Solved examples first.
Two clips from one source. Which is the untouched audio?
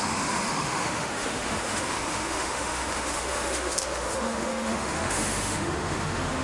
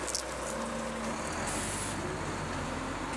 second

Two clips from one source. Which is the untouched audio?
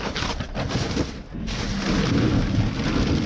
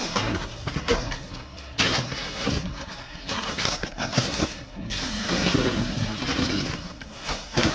first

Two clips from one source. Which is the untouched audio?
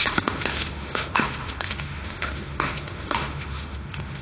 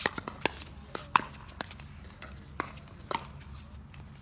second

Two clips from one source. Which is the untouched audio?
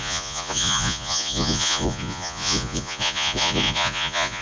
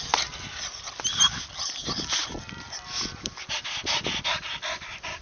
second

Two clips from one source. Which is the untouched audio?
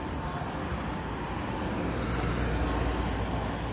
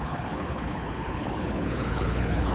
first